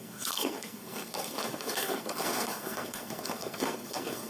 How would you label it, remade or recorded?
remade